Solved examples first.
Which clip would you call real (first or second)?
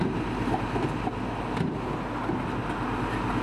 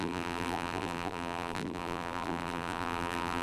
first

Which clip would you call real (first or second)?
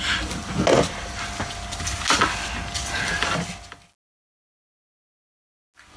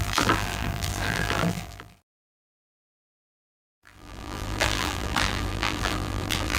first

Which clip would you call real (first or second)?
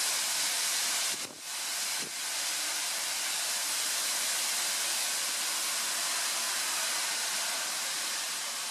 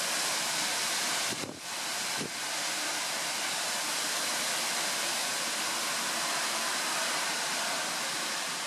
first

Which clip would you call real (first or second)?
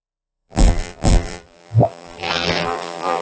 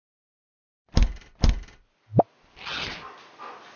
second